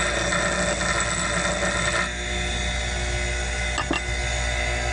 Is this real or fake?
real